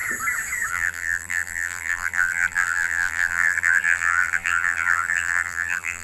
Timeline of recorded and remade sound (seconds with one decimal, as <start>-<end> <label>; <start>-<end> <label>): 0.0-0.7 recorded; 0.7-6.0 remade